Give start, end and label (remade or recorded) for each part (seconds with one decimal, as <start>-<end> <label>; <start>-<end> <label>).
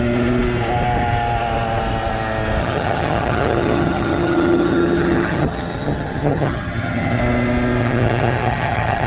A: 0.0-2.6 recorded; 2.6-7.2 remade; 7.2-7.8 recorded; 7.8-9.1 remade